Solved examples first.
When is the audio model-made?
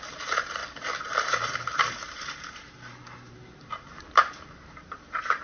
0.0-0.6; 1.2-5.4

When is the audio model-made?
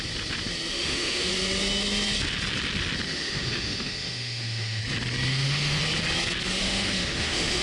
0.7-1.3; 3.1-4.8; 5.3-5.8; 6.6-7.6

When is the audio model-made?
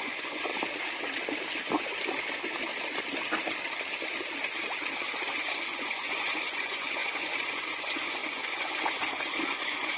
0.0-0.5; 5.4-10.0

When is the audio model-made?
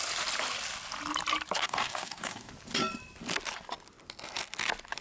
1.6-2.5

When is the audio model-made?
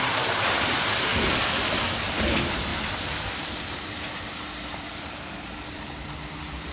0.0-1.1; 2.2-2.7; 3.7-6.7